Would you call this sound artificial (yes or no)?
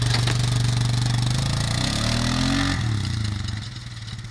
no